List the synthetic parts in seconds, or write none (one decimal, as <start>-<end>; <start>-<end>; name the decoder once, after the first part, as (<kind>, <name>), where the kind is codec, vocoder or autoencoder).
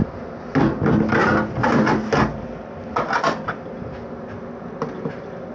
none